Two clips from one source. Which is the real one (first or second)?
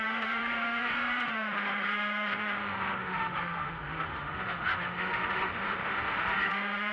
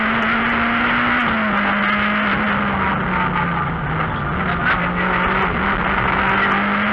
second